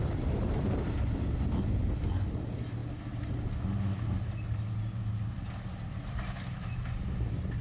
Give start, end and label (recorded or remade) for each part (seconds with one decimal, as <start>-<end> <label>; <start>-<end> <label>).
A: 0.0-7.6 recorded